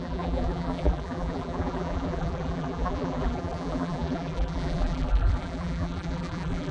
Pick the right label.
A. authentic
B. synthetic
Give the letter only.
B